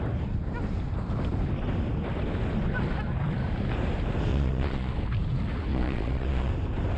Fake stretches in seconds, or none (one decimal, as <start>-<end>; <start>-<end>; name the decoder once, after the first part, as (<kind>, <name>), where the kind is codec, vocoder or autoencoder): 4.3-4.9 (vocoder, Vocos); 5.7-6.5